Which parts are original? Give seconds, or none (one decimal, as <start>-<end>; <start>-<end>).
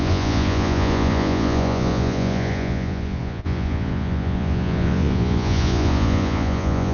none